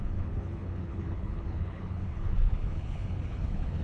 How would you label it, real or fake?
fake